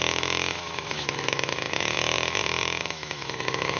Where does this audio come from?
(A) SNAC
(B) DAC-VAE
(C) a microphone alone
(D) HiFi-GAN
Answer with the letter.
B